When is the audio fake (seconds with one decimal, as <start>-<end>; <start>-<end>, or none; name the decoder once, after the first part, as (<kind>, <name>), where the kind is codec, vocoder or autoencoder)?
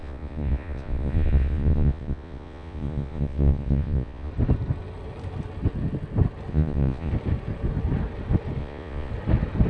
0.0-4.3 (vocoder, Vocos); 6.5-7.1; 8.6-9.1